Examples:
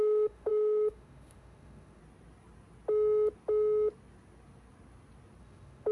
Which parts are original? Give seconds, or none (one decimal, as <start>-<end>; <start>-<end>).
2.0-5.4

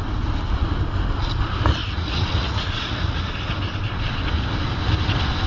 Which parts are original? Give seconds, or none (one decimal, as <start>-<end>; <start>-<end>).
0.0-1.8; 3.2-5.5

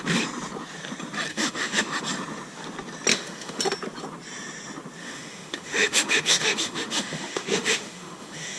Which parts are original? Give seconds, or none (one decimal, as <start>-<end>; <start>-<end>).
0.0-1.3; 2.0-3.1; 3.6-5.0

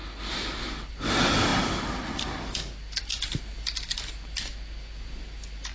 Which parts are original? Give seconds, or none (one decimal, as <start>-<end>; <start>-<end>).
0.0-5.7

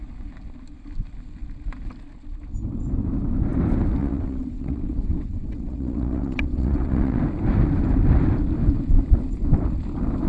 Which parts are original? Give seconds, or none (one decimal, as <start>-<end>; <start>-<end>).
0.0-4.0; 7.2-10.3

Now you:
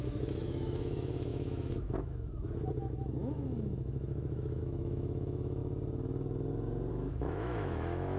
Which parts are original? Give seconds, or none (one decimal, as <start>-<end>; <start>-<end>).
5.6-6.9